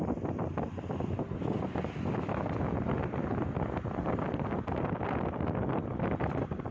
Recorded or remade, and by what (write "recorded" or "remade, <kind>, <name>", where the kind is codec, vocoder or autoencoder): recorded